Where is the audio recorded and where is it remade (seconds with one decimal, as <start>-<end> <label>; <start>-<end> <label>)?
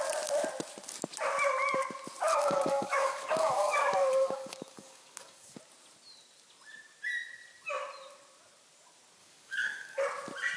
0.0-2.3 recorded; 2.3-5.6 remade; 5.6-9.2 recorded; 9.2-10.0 remade; 10.0-10.6 recorded